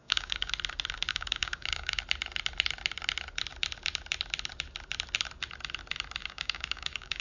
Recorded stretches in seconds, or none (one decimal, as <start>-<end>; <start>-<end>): 0.5-1.1; 2.0-6.2

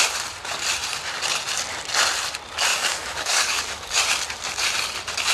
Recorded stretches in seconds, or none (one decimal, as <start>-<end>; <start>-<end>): 0.0-2.7; 4.0-5.3

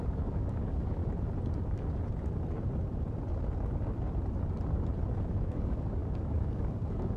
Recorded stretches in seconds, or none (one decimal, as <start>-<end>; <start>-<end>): 1.0-5.3

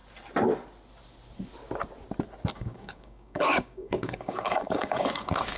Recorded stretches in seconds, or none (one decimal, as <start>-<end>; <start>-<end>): 0.0-2.5